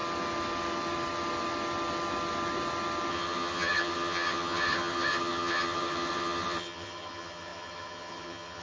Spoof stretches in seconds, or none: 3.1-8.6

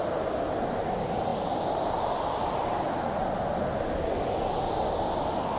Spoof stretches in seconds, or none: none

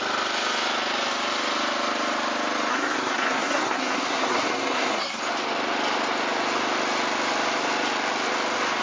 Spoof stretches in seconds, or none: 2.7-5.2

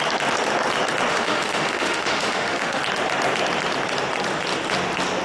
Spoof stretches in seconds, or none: 1.1-2.8

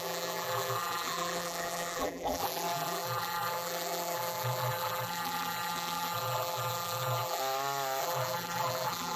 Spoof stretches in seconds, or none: 0.0-7.4; 8.0-9.2

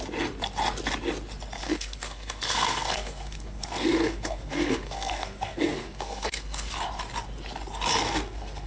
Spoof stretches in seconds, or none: 1.6-6.7; 8.0-8.7